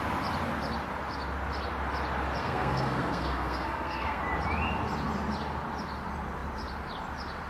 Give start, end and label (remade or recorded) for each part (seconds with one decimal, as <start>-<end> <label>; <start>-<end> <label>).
0.0-2.4 recorded; 2.4-4.2 remade; 4.2-7.5 recorded